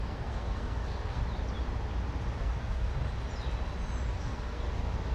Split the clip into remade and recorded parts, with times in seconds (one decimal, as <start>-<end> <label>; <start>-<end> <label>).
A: 0.0-1.2 remade; 1.2-2.4 recorded; 2.4-2.9 remade; 2.9-4.1 recorded; 4.1-5.1 remade